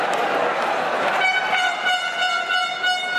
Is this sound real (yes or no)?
yes